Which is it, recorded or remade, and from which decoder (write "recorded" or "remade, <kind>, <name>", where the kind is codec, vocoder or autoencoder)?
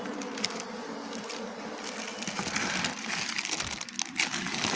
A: recorded